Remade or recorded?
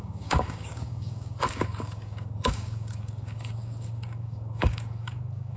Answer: remade